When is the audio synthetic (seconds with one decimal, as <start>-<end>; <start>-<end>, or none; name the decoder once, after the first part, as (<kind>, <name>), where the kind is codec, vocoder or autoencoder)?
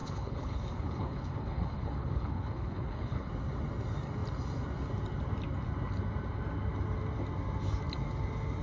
0.0-3.3 (codec, HILCodec)